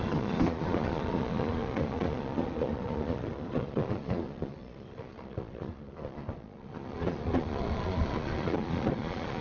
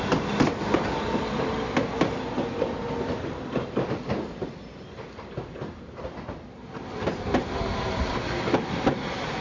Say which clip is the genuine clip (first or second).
second